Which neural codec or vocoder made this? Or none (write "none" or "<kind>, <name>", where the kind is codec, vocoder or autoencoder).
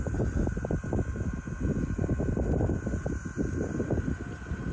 none